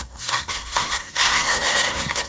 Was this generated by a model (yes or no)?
yes